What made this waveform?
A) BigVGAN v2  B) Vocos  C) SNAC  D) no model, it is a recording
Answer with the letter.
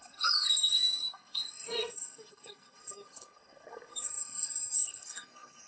C